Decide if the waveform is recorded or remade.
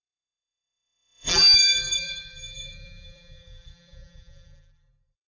remade